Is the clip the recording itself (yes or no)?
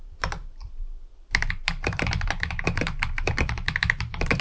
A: no